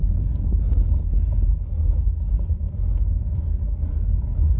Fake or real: real